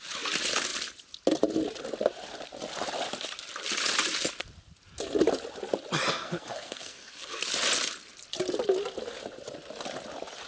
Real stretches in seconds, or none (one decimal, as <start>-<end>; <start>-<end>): 0.0-6.1; 7.4-10.5